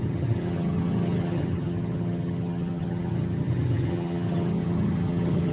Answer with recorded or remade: remade